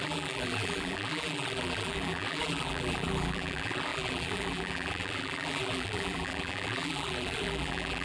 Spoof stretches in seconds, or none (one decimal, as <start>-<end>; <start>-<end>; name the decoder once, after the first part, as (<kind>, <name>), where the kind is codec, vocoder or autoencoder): 0.0-8.0 (vocoder, BigVGAN v2)